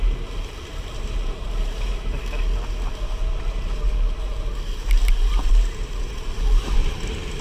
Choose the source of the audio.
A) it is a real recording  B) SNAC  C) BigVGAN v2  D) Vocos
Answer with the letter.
A